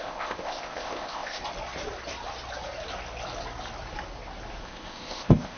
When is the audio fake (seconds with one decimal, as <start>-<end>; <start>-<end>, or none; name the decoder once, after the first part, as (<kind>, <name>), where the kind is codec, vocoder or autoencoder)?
0.0-1.4 (codec, ZipCodec); 4.6-5.6